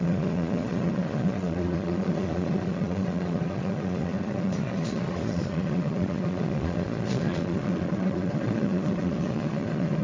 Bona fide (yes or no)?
no